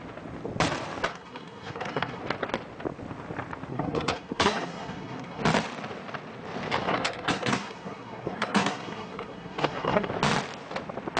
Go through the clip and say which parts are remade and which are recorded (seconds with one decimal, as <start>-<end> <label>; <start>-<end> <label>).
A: 0.0-1.1 recorded; 1.1-2.2 remade; 2.2-3.7 recorded; 3.7-5.4 remade; 5.4-6.8 recorded; 6.8-10.1 remade; 10.1-11.2 recorded